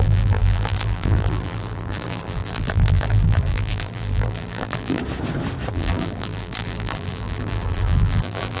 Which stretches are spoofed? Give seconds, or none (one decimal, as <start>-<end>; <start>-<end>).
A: 0.0-5.0; 5.7-8.6